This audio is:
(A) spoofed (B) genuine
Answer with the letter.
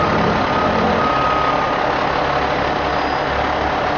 B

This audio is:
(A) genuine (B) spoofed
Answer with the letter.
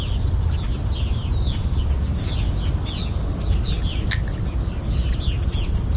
A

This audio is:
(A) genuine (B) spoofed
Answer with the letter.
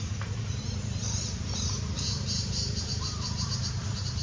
B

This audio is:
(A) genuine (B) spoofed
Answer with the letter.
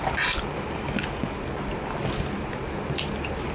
A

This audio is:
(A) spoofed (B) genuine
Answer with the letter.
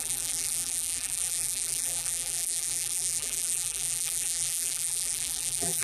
A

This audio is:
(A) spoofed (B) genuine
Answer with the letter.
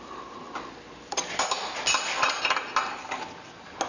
B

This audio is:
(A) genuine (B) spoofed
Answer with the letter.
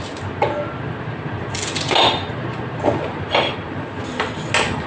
A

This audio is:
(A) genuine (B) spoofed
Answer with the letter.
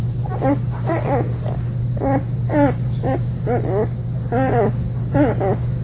A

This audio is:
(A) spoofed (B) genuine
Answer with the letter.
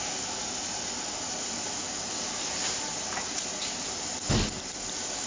B